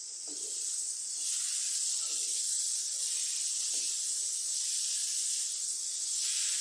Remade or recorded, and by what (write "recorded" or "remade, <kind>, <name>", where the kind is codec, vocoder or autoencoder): recorded